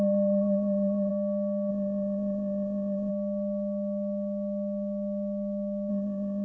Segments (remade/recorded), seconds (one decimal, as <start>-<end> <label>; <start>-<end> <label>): 0.0-1.1 remade; 1.1-1.7 recorded; 1.7-3.1 remade; 3.1-5.9 recorded; 5.9-6.4 remade